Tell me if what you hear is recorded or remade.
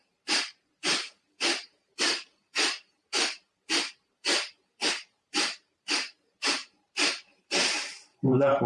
remade